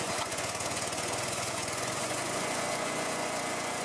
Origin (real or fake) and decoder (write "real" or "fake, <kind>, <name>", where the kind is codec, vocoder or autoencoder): fake, vocoder, Vocos